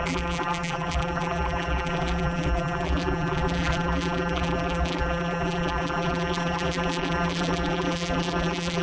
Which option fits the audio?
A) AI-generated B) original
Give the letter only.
A